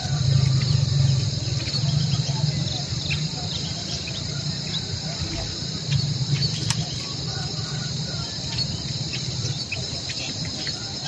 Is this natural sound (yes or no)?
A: yes